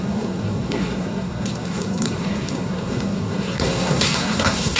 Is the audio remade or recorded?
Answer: remade